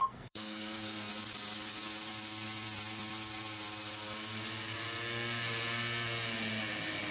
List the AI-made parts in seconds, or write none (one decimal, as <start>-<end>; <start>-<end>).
0.0-1.1